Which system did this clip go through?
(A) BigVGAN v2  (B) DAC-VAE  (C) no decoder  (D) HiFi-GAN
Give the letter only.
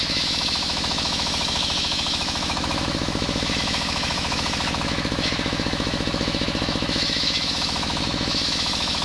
B